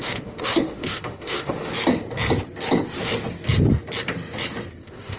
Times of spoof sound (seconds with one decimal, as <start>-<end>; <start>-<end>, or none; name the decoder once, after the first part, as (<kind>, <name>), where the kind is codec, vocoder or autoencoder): 0.0-1.7 (autoencoder, DAC-VAE); 4.8-5.2